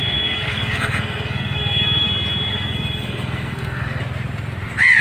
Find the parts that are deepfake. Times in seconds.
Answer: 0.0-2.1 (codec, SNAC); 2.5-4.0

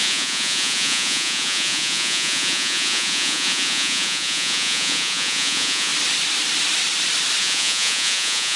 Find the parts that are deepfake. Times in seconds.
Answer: 0.0-5.9 (vocoder, Vocos); 7.4-8.6

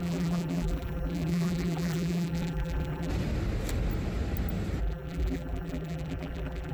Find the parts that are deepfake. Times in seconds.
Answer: 0.0-3.1 (vocoder, BigVGAN v2); 4.8-6.7

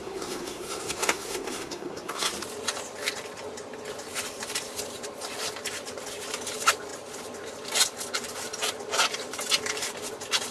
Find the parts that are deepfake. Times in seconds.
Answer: 0.0-2.3 (codec, SNAC)

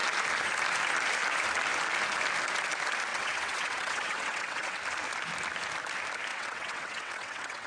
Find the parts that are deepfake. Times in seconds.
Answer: 3.1-4.8 (vocoder, WaveNeXt); 6.3-7.7

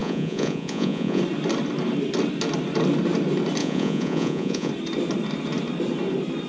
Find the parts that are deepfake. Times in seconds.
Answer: 0.0-1.2 (vocoder, Vocos); 3.6-4.7

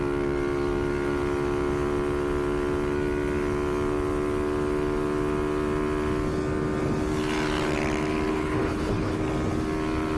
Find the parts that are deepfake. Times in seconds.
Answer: 8.3-9.2 (codec, HILCodec)

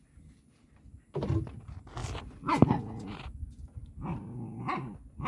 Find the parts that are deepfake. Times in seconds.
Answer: 3.4-4.6 (vocoder, BigVGAN v2)